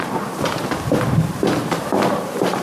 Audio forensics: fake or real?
fake